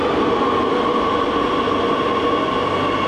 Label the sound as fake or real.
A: real